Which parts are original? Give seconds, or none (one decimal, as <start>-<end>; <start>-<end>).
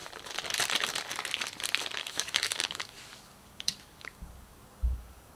0.0-2.0